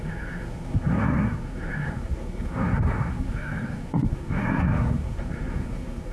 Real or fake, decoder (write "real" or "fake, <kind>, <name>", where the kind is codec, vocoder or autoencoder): fake, codec, SNAC